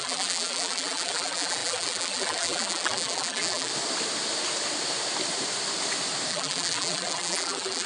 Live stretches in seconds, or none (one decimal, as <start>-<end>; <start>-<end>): 3.7-6.3